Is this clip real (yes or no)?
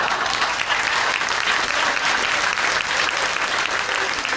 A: yes